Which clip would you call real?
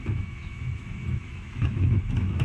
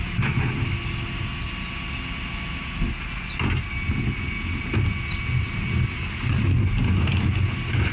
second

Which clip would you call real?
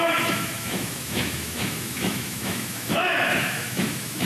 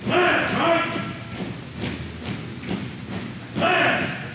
second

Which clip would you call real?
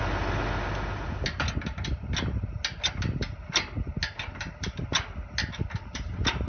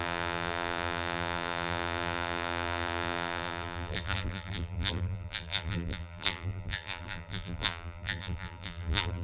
first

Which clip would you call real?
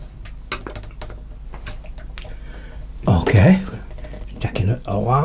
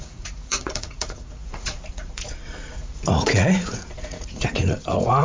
first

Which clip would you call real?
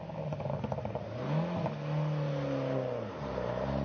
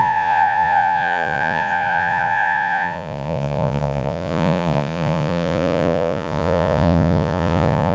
first